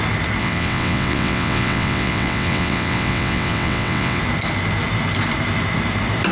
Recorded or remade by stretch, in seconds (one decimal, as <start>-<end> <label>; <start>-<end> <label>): 0.0-0.4 recorded; 0.4-4.2 remade; 4.2-6.3 recorded